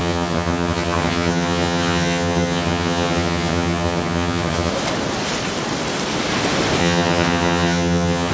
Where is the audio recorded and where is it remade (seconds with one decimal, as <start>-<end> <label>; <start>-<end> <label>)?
0.0-4.7 remade; 4.7-6.8 recorded; 6.8-8.3 remade